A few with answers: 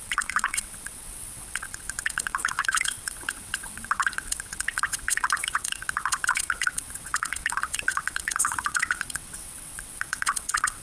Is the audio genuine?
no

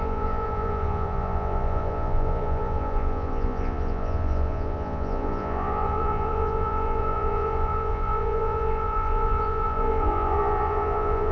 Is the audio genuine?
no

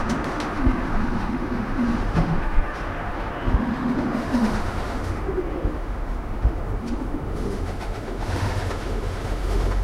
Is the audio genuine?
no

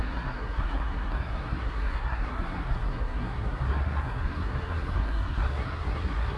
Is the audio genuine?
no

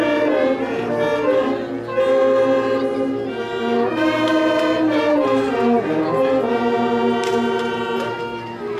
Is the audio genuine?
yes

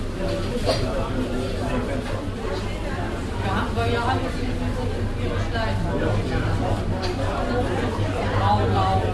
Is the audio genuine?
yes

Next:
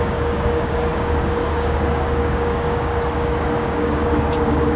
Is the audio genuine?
no